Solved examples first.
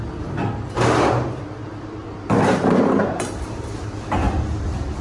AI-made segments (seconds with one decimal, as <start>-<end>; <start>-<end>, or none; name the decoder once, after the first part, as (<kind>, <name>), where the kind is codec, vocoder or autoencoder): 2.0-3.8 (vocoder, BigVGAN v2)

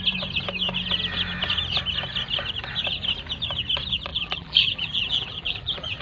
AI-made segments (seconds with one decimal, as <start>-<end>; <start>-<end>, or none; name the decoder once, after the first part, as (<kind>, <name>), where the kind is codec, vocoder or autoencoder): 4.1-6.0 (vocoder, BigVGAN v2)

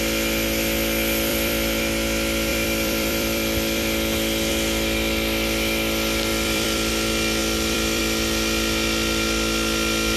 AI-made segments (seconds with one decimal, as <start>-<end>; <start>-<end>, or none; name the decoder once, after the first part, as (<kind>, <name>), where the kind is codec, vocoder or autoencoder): 1.3-1.8 (vocoder, BigVGAN v2); 2.5-4.5; 6.3-6.9; 7.4-8.0

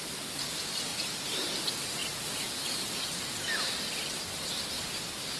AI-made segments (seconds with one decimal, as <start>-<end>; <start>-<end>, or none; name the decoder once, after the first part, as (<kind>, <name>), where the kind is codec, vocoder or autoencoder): 0.9-1.6 (vocoder, BigVGAN v2)

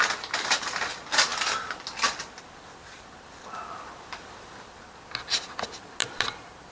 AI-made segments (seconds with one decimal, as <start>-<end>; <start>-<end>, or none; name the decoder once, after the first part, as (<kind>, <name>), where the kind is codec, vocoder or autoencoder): 6.0-6.7 (vocoder, BigVGAN v2)

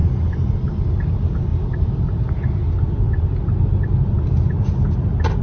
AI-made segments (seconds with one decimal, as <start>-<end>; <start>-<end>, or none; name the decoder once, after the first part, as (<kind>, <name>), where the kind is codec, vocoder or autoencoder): none